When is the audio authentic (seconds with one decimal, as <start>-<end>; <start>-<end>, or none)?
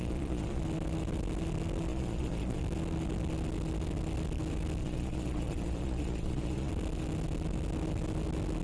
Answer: 0.6-1.9; 2.6-4.8; 6.7-8.6